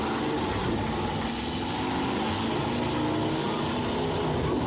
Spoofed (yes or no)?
no